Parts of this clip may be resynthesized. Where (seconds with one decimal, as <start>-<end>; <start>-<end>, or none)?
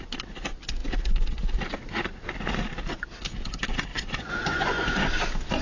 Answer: 3.9-5.0